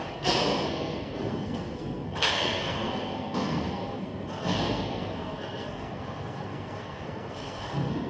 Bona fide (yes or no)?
no